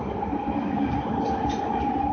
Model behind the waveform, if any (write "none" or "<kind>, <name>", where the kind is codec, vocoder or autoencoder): none